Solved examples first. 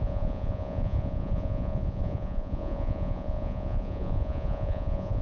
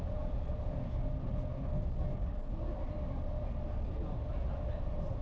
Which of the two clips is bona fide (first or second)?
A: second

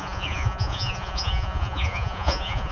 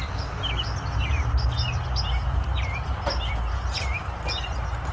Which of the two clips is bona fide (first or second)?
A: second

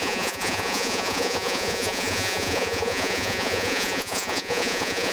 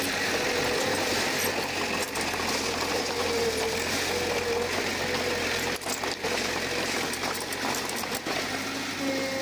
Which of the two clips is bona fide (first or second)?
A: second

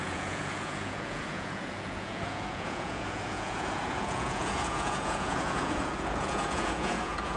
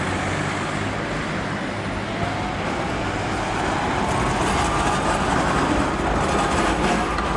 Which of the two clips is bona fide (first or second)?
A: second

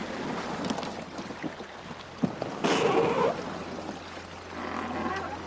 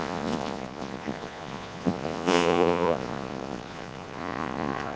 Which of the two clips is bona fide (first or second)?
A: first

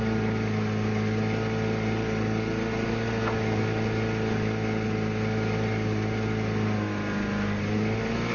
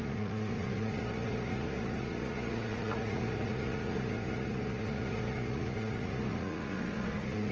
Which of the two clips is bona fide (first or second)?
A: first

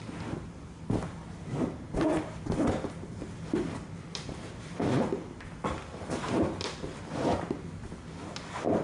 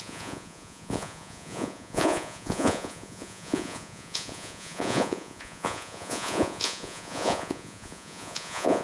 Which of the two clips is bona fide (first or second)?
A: first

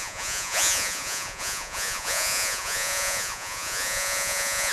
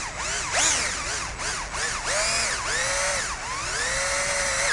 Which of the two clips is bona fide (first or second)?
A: second